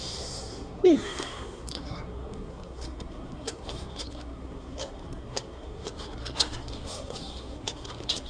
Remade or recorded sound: remade